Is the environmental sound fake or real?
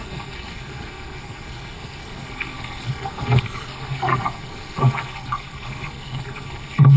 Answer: fake